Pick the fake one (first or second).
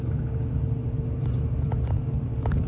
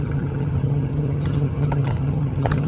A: second